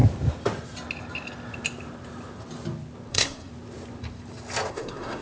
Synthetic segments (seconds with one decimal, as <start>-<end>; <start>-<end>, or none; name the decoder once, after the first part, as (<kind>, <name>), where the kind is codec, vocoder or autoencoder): 3.1-3.5 (codec, SNAC); 4.7-5.2